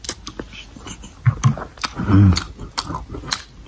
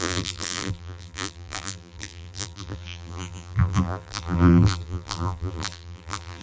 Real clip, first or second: first